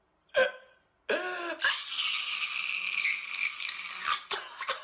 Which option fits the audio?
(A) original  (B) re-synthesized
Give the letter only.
A